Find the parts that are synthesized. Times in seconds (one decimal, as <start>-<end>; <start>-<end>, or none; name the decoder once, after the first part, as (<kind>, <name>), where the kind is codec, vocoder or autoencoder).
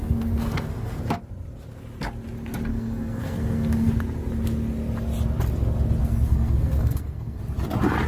0.0-1.0 (codec, SNAC); 2.7-3.9; 6.0-7.4